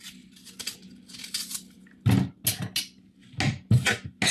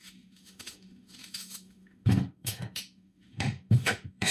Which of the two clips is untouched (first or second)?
first